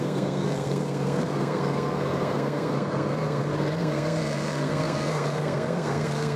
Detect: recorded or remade remade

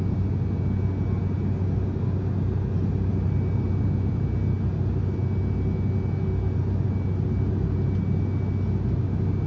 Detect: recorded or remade recorded